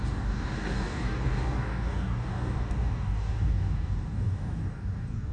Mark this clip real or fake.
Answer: fake